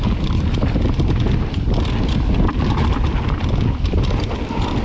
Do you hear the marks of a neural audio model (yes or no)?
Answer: no